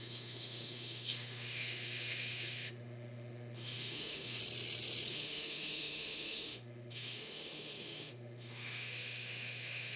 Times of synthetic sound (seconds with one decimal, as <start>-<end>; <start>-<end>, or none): 0.0-4.4; 5.1-10.0